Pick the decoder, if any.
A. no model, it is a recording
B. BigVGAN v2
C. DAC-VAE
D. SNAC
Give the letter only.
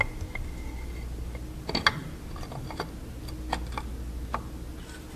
A